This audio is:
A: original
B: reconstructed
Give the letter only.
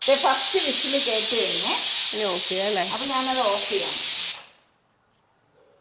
A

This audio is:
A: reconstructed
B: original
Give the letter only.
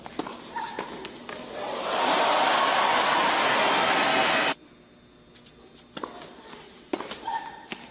B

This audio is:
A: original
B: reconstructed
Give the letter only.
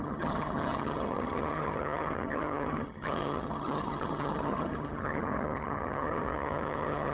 B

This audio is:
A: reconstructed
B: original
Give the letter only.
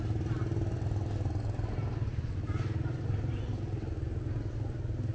B